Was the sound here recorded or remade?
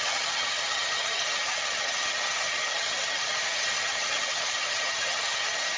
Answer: remade